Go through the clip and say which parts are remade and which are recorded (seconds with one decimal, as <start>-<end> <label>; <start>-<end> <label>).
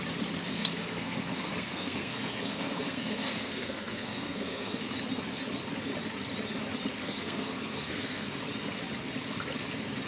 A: 0.0-0.5 recorded; 0.5-4.9 remade; 4.9-7.0 recorded; 7.0-8.4 remade; 8.4-10.1 recorded